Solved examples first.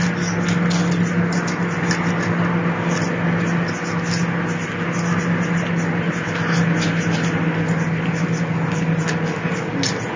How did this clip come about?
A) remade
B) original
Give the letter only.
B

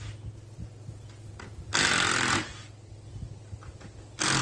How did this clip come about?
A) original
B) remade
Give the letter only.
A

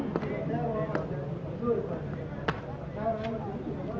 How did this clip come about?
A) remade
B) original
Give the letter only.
B